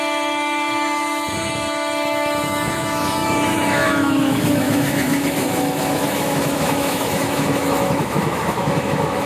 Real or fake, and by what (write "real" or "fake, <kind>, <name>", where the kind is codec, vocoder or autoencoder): fake, autoencoder, DAC-VAE